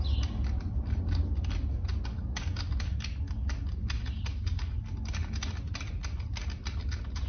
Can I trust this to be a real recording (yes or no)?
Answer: yes